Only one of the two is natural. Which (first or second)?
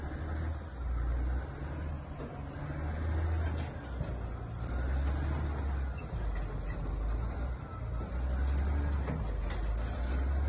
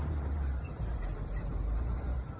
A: first